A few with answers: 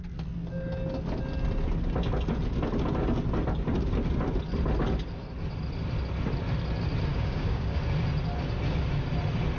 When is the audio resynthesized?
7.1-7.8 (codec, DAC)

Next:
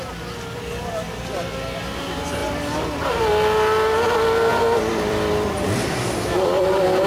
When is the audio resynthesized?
4.5-6.6 (vocoder, BigVGAN v2)

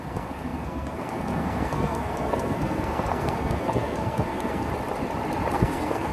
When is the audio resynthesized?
0.0-4.7 (codec, SNAC); 5.5-6.1

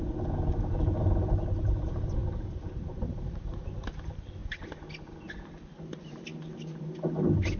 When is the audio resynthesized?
none

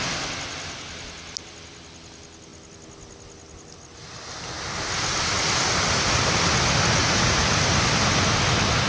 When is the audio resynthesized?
7.0-7.6 (vocoder, Vocos)